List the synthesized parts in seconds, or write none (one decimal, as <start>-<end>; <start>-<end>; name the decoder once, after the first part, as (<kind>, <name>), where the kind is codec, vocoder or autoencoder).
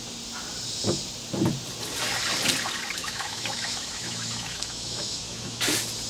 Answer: 3.0-5.6 (autoencoder, DAC-VAE)